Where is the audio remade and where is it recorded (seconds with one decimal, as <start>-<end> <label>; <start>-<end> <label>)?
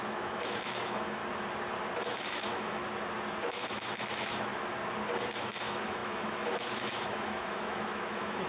0.0-1.2 remade; 1.2-2.0 recorded; 2.0-2.8 remade; 2.8-3.4 recorded; 3.4-4.5 remade; 4.5-5.4 recorded; 5.4-8.5 remade